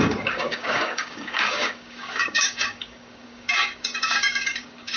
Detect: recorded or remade remade